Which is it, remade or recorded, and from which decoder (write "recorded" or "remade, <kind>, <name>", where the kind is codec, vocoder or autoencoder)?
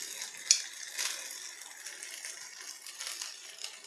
recorded